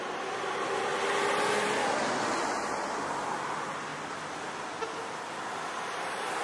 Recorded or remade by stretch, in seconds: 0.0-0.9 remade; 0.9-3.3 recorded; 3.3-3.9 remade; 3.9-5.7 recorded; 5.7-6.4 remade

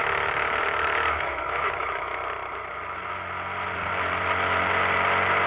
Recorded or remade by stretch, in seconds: 0.0-2.2 remade; 2.2-5.5 recorded

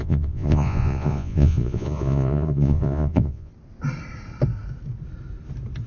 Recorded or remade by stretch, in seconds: 0.0-3.5 remade; 3.5-5.9 recorded

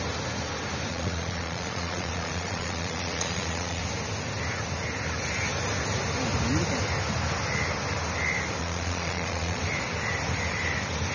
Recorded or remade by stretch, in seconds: 0.0-0.9 recorded; 0.9-3.8 remade; 3.8-8.6 recorded; 8.6-9.6 remade; 9.6-11.1 recorded

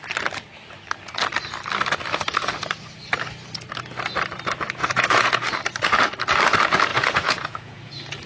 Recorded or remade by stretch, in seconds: 0.0-4.8 recorded; 4.8-5.6 remade; 5.6-6.9 recorded; 6.9-7.9 remade; 7.9-8.3 recorded

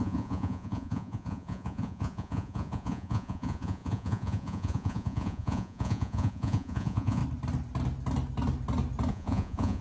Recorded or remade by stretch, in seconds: 0.0-7.2 remade; 7.2-9.1 recorded; 9.1-9.8 remade